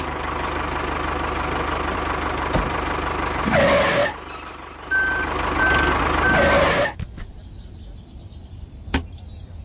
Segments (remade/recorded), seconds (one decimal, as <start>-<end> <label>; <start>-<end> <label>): 0.0-9.6 recorded

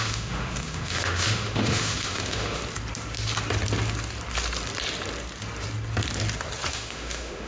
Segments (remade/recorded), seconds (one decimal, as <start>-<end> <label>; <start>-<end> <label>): 0.0-2.6 remade; 2.6-6.7 recorded; 6.7-7.5 remade

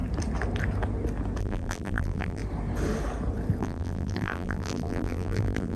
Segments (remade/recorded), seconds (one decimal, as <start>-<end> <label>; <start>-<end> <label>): 0.0-1.4 recorded; 1.4-2.4 remade; 2.4-3.6 recorded; 3.6-5.8 remade

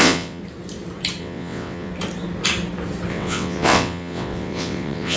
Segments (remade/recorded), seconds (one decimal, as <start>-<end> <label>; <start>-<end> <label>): 0.0-0.4 remade; 0.4-1.2 recorded; 1.2-1.9 remade; 1.9-3.1 recorded; 3.1-5.2 remade

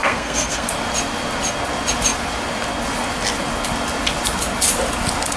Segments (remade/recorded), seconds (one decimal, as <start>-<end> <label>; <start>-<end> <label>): 0.0-0.7 remade; 0.7-5.4 recorded

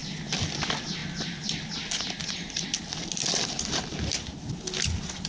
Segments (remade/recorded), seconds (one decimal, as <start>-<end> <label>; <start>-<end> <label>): 0.0-5.3 recorded

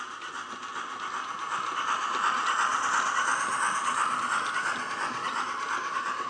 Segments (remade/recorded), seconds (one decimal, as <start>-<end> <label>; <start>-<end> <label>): 0.0-6.3 recorded

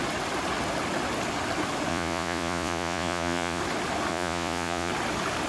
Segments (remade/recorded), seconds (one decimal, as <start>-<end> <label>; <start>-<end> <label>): 0.0-1.9 recorded; 1.9-3.6 remade; 3.6-4.1 recorded; 4.1-4.9 remade; 4.9-5.5 recorded